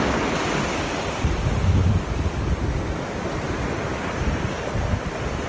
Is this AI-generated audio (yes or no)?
no